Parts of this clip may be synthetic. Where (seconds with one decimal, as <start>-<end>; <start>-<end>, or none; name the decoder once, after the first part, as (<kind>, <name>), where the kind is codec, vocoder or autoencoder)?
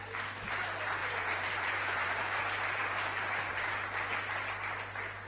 1.0-2.4 (vocoder, BigVGAN v2)